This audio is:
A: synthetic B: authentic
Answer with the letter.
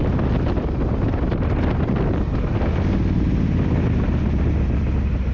B